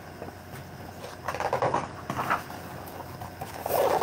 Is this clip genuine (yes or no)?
yes